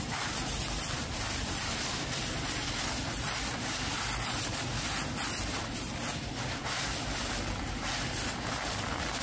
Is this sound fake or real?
real